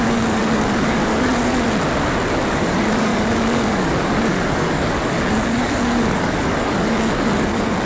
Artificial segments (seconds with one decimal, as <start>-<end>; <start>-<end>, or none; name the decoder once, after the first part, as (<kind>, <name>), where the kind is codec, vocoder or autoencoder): 0.0-1.3 (codec, DAC); 2.5-7.8